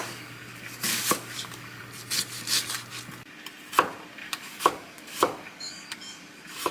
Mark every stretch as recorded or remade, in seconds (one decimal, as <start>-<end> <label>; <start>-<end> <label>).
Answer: 0.0-1.8 remade; 1.8-4.2 recorded; 4.2-6.2 remade; 6.2-6.7 recorded

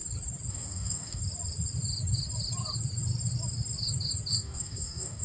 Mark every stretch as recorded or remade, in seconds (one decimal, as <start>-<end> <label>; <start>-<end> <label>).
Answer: 0.0-0.5 recorded; 0.5-1.2 remade; 1.2-4.3 recorded; 4.3-5.2 remade

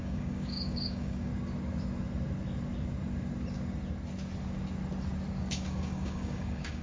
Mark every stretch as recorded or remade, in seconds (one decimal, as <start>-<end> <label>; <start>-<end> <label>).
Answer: 0.0-1.3 remade; 1.3-5.4 recorded; 5.4-6.8 remade

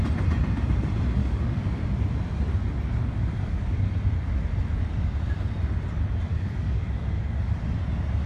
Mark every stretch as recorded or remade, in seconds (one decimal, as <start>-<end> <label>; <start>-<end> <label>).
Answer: 0.0-1.2 recorded; 1.2-1.8 remade; 1.8-2.9 recorded; 2.9-3.9 remade; 3.9-6.3 recorded; 6.3-7.6 remade; 7.6-8.3 recorded

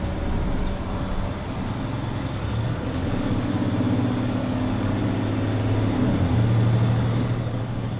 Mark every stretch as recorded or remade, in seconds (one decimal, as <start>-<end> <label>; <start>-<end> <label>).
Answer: 0.0-2.5 recorded; 2.5-3.5 remade; 3.5-4.4 recorded; 4.4-4.9 remade; 4.9-7.1 recorded; 7.1-8.0 remade